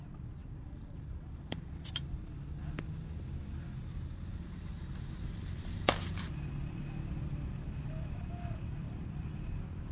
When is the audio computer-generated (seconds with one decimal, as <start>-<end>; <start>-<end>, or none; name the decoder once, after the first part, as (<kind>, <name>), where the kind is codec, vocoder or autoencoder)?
0.4-1.7 (vocoder, BigVGAN v2); 4.3-6.5